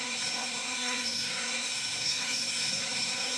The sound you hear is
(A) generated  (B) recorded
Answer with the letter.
A